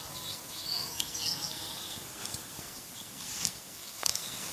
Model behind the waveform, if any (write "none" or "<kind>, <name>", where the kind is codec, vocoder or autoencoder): codec, SNAC